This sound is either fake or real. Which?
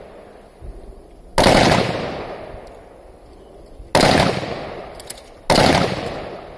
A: real